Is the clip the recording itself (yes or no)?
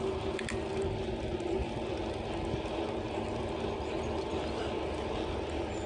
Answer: yes